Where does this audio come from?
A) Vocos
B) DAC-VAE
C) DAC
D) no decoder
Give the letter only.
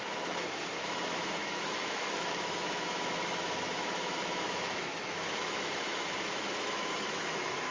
B